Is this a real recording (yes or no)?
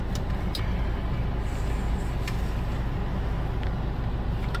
yes